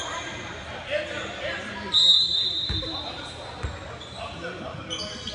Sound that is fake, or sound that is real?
real